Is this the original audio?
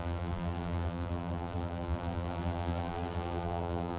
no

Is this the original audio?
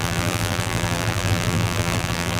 no